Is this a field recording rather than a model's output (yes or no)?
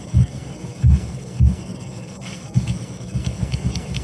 no